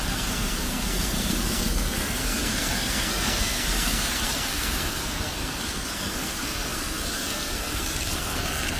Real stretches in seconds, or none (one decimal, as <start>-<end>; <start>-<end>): none